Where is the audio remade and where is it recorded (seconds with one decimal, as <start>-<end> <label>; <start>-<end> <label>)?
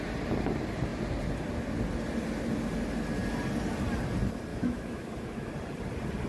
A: 0.0-4.5 recorded; 4.5-5.5 remade; 5.5-6.3 recorded